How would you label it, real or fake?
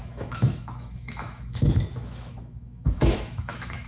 fake